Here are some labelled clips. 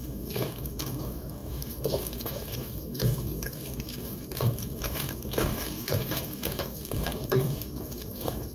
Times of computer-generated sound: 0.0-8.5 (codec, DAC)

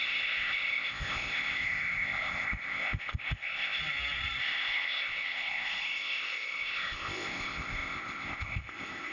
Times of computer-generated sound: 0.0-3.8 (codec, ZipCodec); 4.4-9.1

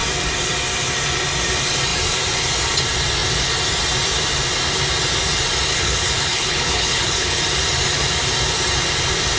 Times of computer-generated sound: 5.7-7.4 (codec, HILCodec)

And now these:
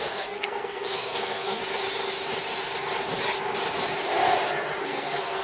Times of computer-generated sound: 0.0-1.6 (codec, SNAC); 4.8-5.4

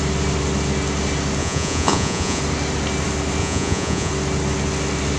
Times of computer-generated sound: 1.4-2.4 (vocoder, Vocos); 3.4-4.1